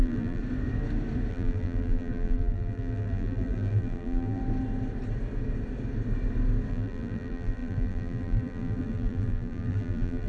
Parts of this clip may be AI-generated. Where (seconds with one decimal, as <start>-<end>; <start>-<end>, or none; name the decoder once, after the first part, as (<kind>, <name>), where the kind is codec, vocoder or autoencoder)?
0.0-0.4 (vocoder, BigVGAN v2); 1.3-4.4; 6.7-10.3